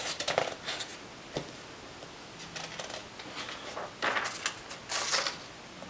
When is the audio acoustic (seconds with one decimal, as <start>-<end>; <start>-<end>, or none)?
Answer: 0.0-5.9